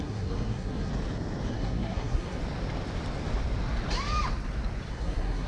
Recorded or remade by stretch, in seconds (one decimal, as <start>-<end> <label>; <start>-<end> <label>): 0.0-0.9 remade; 0.9-1.5 recorded; 1.5-2.4 remade; 2.4-4.9 recorded; 4.9-5.5 remade